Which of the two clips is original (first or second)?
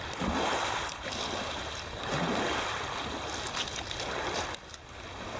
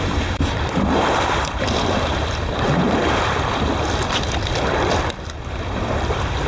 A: first